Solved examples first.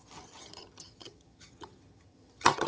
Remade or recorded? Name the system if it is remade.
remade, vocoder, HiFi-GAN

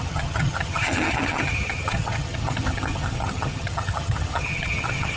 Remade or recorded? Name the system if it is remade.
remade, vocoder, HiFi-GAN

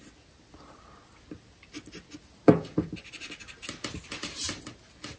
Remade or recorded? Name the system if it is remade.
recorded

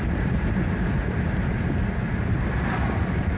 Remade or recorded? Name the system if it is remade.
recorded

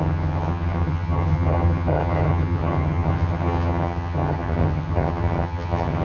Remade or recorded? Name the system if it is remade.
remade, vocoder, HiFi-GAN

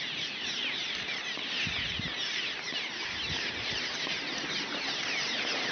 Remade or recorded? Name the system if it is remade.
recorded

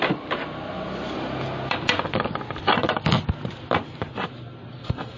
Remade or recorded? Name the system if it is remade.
recorded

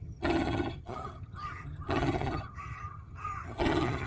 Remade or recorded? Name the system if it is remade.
remade, vocoder, HiFi-GAN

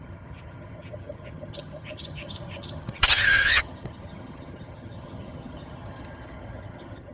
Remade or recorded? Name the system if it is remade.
remade, vocoder, HiFi-GAN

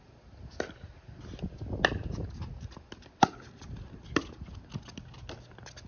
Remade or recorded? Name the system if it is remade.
recorded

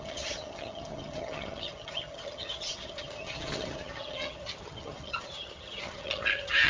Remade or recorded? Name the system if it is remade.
remade, vocoder, HiFi-GAN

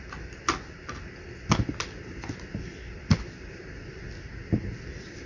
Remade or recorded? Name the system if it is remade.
recorded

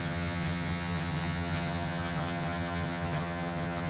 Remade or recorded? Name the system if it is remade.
remade, vocoder, HiFi-GAN